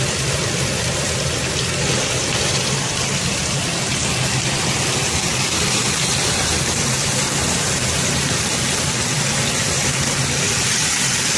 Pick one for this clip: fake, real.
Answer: real